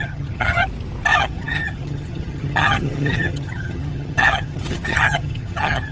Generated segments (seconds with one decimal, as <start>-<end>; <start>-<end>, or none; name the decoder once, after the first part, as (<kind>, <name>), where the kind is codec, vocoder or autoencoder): 0.0-0.6 (vocoder, HiFi-GAN); 1.2-5.9